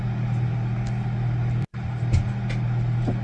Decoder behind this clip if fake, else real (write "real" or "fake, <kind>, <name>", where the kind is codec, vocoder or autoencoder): real